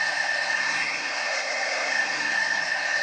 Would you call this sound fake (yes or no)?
yes